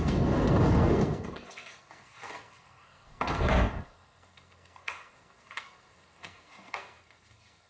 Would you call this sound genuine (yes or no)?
no